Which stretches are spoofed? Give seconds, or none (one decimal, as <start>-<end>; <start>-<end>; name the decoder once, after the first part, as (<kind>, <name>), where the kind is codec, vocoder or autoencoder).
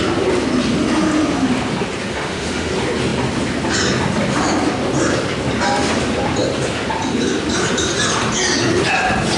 2.1-2.7 (autoencoder, DAC-VAE)